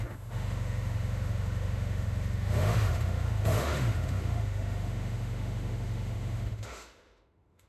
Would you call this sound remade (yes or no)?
yes